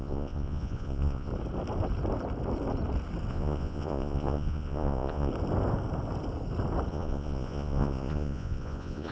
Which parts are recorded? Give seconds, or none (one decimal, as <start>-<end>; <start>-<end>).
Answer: 1.3-3.3; 5.3-6.9